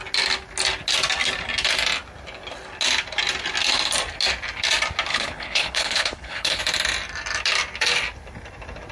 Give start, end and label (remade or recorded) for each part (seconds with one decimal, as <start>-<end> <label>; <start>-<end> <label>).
0.0-5.1 recorded; 5.1-6.6 remade; 6.6-8.9 recorded